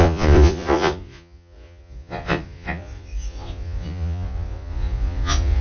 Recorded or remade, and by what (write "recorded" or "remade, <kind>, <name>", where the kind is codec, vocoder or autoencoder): remade, vocoder, Vocos